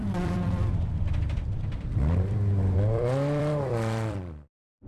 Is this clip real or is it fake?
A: fake